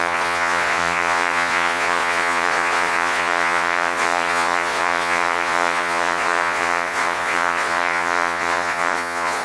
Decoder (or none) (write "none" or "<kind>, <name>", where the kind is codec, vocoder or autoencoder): vocoder, Vocos